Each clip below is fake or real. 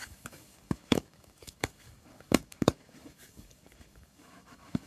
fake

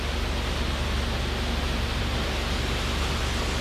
real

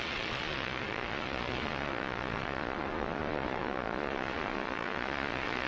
fake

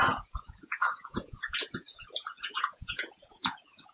fake